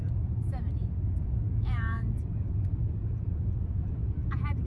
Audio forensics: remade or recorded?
remade